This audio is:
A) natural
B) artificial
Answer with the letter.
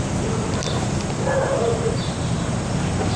A